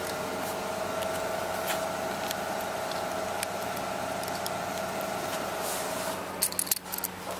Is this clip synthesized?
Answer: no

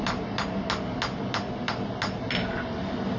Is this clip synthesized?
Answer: no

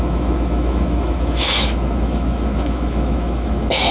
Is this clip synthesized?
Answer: yes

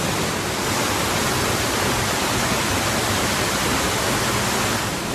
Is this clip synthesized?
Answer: no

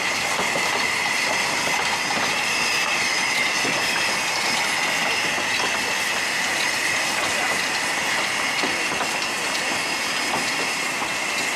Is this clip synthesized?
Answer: no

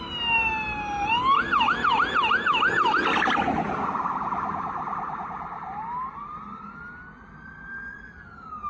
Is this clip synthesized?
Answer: no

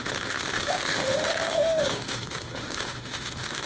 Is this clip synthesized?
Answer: yes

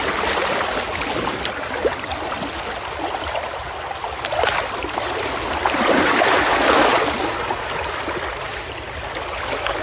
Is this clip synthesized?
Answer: no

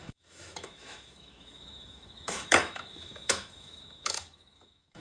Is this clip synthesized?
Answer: yes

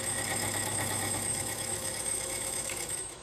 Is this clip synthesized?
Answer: yes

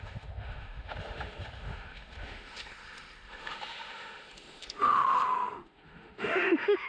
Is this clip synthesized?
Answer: yes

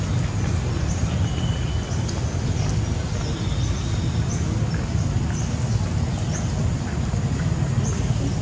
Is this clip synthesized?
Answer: no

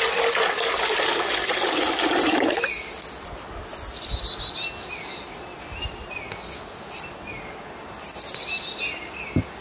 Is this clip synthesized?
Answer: no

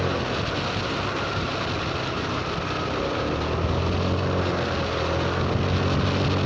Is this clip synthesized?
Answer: no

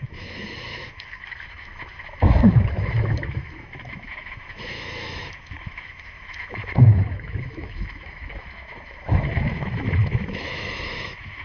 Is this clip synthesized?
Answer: yes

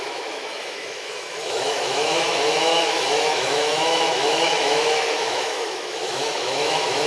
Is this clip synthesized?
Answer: yes